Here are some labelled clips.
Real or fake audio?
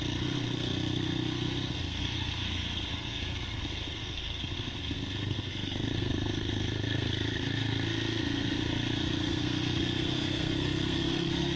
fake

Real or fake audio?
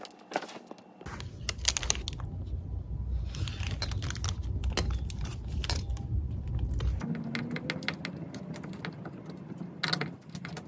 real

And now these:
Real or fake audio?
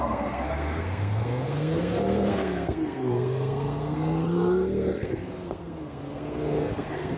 fake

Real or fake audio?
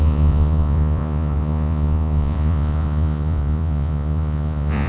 fake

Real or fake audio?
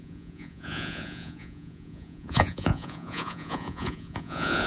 fake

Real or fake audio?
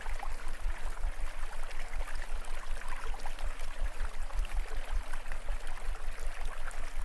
real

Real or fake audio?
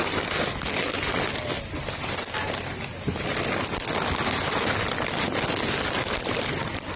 real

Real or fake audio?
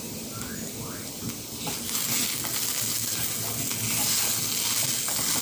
real